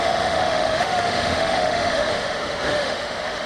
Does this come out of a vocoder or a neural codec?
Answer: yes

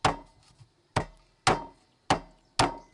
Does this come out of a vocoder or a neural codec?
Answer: no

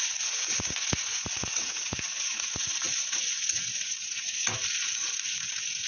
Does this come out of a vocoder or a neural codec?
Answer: yes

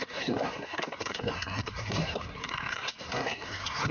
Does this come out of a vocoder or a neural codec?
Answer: yes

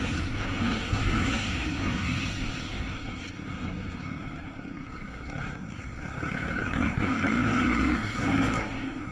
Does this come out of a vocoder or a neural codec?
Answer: yes